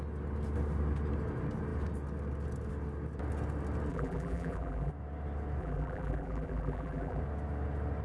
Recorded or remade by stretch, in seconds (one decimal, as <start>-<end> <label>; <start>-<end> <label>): 0.0-3.9 recorded; 3.9-4.9 remade; 4.9-5.6 recorded; 5.6-7.2 remade; 7.2-8.0 recorded